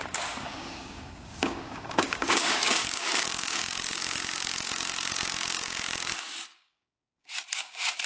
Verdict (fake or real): fake